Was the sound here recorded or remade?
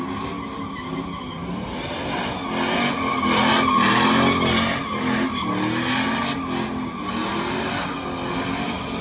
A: recorded